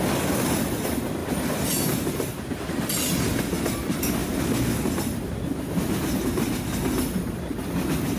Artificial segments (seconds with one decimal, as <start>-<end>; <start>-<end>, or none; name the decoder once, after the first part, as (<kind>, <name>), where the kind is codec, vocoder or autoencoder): none